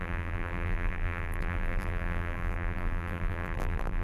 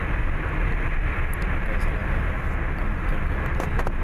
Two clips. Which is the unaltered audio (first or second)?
second